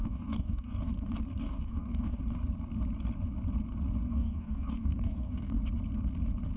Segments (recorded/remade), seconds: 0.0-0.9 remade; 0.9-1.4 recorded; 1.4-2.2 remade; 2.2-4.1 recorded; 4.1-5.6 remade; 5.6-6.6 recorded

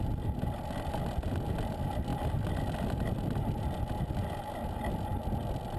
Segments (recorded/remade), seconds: 0.0-5.8 recorded

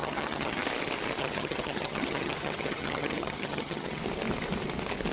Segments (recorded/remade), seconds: 0.0-0.6 remade; 0.6-1.2 recorded; 1.2-4.0 remade; 4.0-5.1 recorded